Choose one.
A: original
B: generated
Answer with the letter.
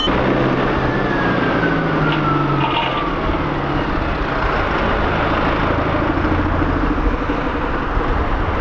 A